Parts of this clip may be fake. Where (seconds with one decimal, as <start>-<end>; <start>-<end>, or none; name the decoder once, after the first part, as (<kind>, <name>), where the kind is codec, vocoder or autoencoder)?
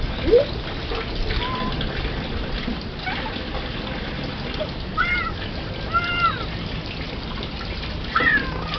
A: none